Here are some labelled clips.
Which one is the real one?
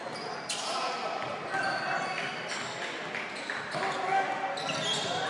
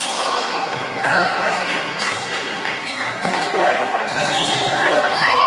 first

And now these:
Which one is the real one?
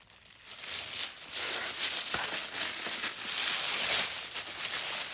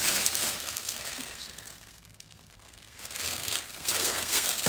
first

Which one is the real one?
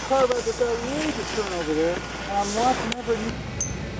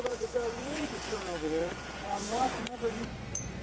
first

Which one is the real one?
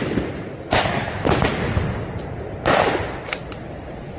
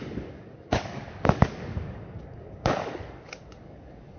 first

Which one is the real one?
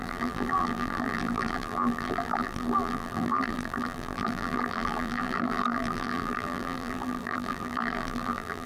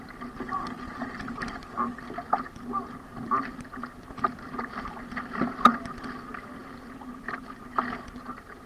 second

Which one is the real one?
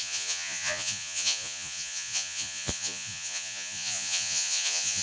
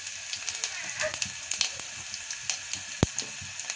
second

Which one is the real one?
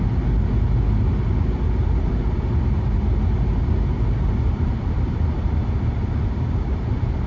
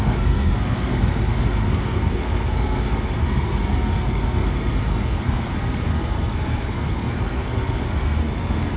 first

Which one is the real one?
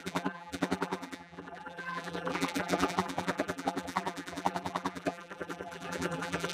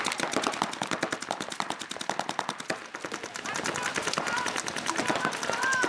second